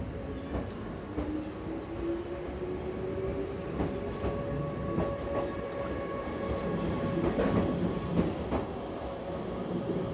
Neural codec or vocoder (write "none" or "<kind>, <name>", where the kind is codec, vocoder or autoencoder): none